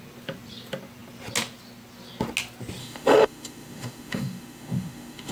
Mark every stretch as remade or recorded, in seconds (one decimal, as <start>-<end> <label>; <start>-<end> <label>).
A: 0.0-2.8 recorded; 2.8-5.3 remade